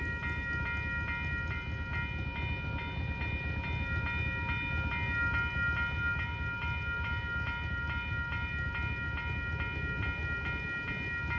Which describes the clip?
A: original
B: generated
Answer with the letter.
A